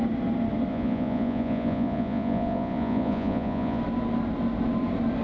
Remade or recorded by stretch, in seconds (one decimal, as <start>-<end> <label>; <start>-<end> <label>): 0.0-0.7 recorded; 0.7-3.8 remade; 3.8-5.2 recorded

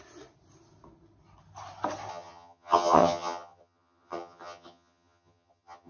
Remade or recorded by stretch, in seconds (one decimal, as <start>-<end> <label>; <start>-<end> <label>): 0.0-2.1 recorded; 2.1-5.9 remade